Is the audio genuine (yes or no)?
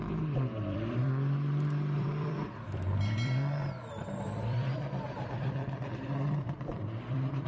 no